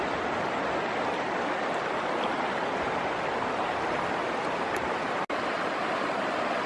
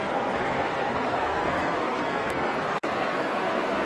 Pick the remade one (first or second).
second